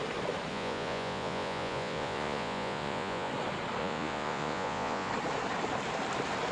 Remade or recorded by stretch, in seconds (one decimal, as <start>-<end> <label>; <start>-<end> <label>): 0.0-0.5 recorded; 0.5-3.3 remade; 3.3-3.8 recorded; 3.8-5.1 remade; 5.1-6.5 recorded